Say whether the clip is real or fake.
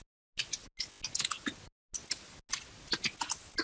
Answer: real